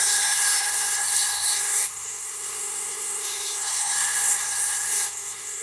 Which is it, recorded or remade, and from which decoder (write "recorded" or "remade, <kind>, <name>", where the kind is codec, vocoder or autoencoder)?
remade, codec, SNAC